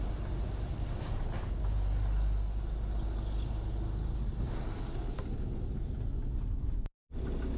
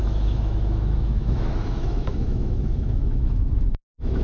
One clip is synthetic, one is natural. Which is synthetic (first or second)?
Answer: second